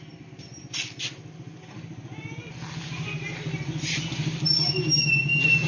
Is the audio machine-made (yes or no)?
no